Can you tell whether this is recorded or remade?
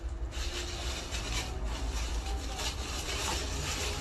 recorded